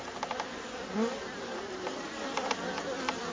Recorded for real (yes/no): yes